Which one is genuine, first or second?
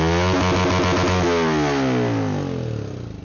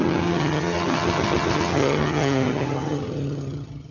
first